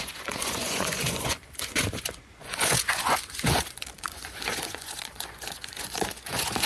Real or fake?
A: fake